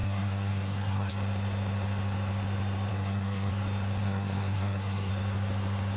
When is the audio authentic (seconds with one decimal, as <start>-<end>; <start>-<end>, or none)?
1.1-2.9; 3.5-4.0; 5.1-6.0